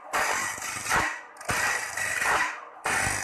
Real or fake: fake